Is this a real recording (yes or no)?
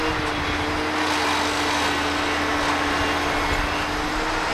yes